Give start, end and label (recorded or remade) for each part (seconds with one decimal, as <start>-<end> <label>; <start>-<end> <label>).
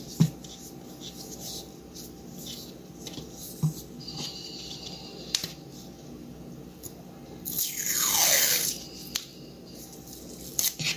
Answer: 0.0-11.0 recorded